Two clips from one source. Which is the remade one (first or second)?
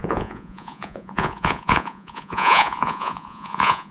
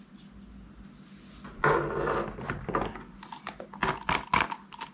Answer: first